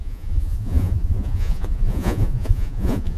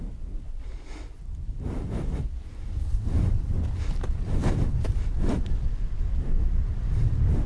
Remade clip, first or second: first